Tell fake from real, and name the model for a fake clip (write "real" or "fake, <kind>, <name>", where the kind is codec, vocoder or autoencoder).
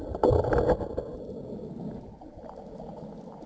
real